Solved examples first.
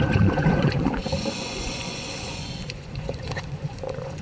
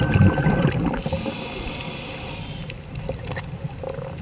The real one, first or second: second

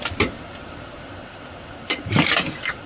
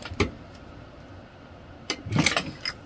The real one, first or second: second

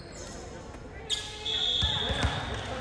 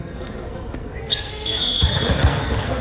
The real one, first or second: first